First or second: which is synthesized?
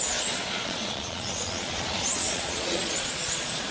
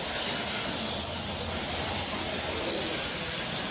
first